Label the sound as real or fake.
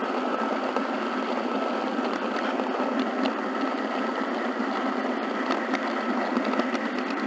real